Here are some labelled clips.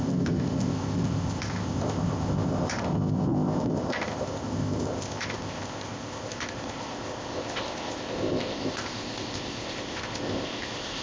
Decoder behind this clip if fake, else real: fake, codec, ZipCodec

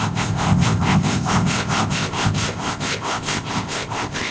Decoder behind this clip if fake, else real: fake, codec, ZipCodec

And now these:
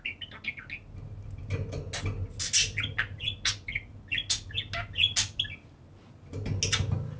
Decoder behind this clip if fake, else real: real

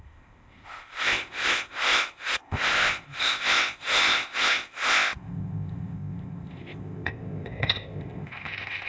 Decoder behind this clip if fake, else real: fake, codec, ZipCodec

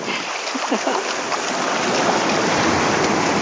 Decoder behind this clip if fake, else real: real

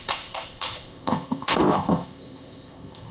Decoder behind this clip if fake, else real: fake, codec, ZipCodec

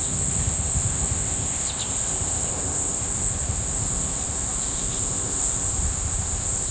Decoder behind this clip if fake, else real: fake, codec, ZipCodec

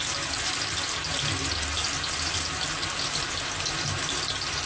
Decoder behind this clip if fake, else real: real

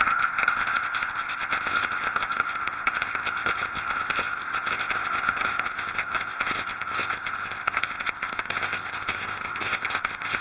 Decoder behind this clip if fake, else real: fake, codec, ZipCodec